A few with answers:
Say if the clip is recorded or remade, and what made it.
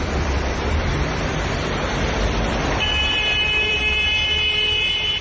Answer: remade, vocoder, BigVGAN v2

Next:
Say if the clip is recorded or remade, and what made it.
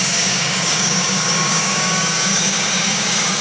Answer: remade, codec, DAC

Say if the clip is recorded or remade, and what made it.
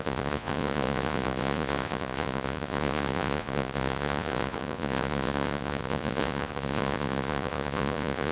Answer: remade, vocoder, Vocos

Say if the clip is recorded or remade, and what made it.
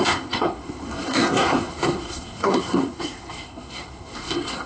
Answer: remade, codec, SNAC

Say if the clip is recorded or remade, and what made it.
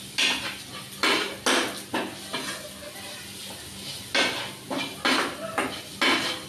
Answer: recorded